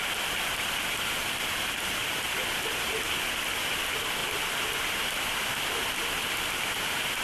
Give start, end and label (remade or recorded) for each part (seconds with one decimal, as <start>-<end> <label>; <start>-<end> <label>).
0.0-2.0 recorded; 2.0-2.6 remade; 2.6-7.2 recorded